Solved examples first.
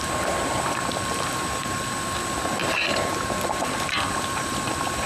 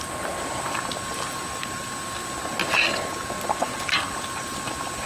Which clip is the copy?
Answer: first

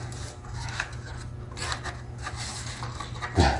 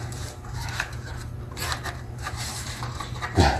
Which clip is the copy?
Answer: second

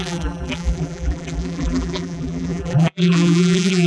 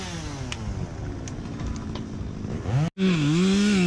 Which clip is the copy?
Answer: first